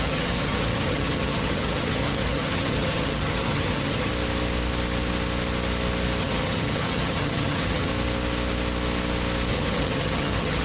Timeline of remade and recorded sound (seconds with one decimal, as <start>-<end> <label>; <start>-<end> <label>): 0.0-4.1 remade; 4.1-6.2 recorded; 6.2-7.9 remade; 7.9-9.5 recorded; 9.5-10.6 remade